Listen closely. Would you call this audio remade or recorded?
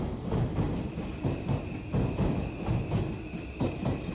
recorded